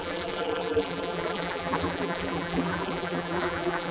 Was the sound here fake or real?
fake